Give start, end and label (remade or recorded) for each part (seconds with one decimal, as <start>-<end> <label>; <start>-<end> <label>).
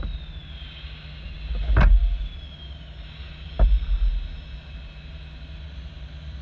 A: 0.0-6.4 recorded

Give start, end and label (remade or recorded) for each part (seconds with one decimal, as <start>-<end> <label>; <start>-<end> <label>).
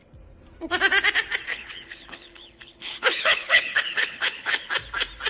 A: 0.0-1.5 recorded; 1.5-4.7 remade; 4.7-5.3 recorded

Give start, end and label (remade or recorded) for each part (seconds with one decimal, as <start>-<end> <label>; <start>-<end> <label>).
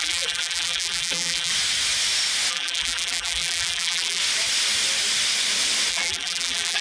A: 0.0-1.5 remade; 1.5-2.5 recorded; 2.5-4.2 remade; 4.2-5.9 recorded; 5.9-6.8 remade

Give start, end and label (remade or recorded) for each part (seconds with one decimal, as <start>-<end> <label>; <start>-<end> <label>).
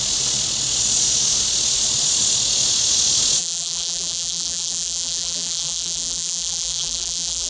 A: 0.0-3.4 recorded; 3.4-7.5 remade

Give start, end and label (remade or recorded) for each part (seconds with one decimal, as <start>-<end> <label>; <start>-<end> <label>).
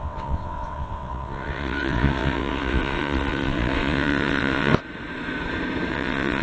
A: 0.0-4.7 remade; 4.7-5.9 recorded; 5.9-6.4 remade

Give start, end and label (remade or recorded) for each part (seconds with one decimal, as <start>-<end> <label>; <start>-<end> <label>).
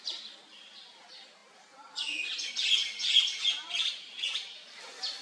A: 0.0-5.2 recorded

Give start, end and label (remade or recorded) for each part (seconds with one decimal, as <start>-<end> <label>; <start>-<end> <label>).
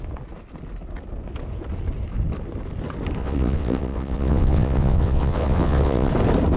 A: 0.0-3.2 recorded; 3.2-6.1 remade; 6.1-6.6 recorded